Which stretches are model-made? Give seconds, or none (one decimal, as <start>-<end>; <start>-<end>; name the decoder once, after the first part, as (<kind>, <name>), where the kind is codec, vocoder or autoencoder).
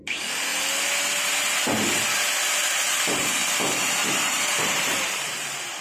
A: 0.0-0.5 (vocoder, BigVGAN v2); 2.7-3.4; 4.0-5.8